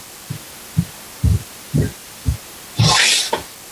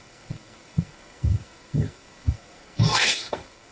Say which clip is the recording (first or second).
first